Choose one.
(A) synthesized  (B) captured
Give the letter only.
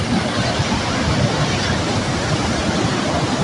B